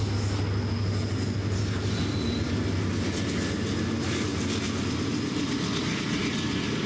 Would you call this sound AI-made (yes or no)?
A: no